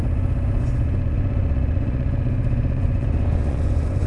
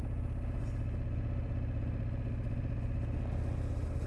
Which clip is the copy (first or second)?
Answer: first